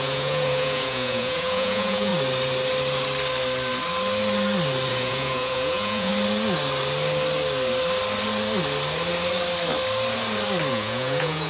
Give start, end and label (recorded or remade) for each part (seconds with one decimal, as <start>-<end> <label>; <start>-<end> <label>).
0.0-2.1 remade; 2.1-4.9 recorded; 4.9-6.1 remade; 6.1-10.7 recorded; 10.7-11.5 remade